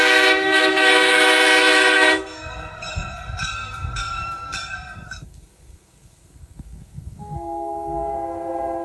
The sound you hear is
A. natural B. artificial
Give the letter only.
B